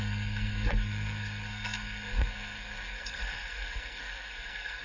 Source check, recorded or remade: remade